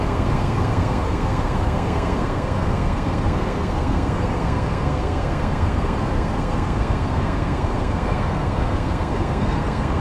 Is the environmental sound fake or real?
fake